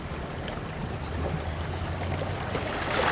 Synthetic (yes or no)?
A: no